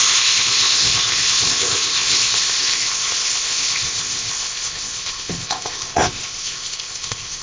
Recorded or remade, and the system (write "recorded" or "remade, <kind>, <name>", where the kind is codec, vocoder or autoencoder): remade, codec, ZipCodec